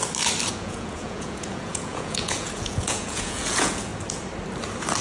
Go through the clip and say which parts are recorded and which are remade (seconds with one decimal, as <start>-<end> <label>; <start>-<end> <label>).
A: 0.0-0.5 recorded; 0.5-3.9 remade; 3.9-5.0 recorded